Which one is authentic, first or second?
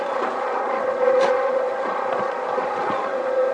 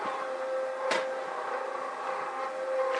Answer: second